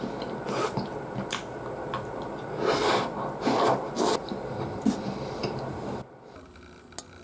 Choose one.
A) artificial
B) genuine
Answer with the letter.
B